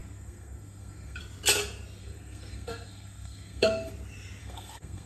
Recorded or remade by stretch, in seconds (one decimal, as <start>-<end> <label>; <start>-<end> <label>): 0.0-1.2 remade; 1.2-2.0 recorded; 2.0-3.9 remade; 3.9-4.4 recorded; 4.4-5.1 remade